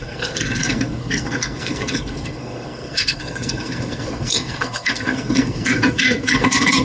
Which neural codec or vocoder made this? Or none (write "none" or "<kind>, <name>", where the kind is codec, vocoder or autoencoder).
codec, SNAC